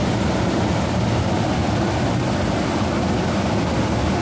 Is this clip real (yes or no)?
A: yes